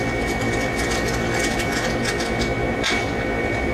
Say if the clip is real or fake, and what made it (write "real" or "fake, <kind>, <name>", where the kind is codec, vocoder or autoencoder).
real